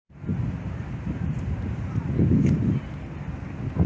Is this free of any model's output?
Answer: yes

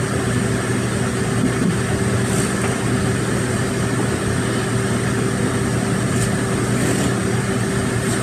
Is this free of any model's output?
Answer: yes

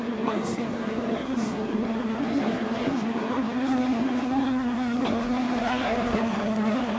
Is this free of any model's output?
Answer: no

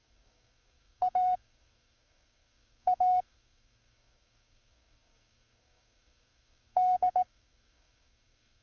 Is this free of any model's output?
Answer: no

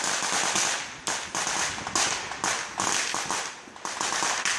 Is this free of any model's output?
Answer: yes